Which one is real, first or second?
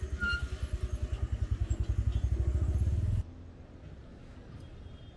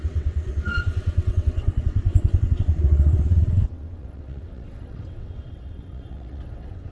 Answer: first